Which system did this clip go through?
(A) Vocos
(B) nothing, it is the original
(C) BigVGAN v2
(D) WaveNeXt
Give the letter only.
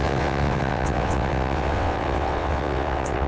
D